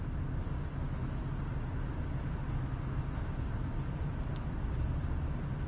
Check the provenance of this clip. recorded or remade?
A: recorded